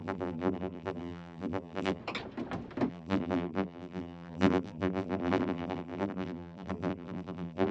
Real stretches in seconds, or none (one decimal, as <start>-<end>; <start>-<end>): 2.0-2.9